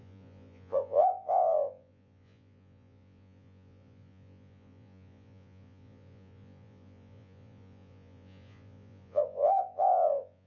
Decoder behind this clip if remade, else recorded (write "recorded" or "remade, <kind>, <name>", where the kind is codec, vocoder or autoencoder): remade, vocoder, Vocos